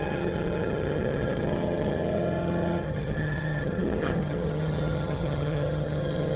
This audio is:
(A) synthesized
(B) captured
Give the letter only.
A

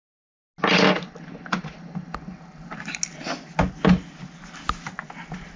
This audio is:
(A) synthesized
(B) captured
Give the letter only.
B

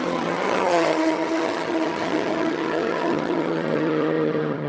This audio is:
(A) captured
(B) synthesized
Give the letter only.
B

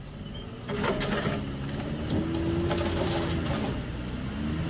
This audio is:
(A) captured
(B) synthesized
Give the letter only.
A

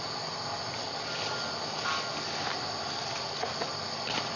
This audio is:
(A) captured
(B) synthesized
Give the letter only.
A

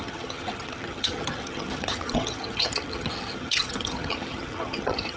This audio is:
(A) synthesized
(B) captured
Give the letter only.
A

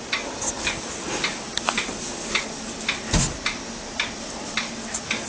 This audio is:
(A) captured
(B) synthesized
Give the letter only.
A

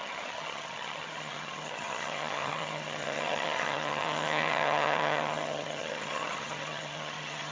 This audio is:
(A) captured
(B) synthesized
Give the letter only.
B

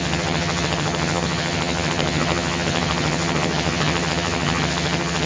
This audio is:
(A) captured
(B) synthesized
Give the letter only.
B